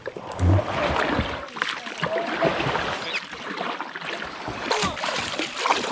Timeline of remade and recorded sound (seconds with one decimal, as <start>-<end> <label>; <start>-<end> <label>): 0.0-2.5 remade; 2.5-4.2 recorded; 4.2-5.9 remade